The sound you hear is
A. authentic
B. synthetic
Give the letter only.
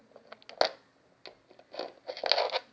A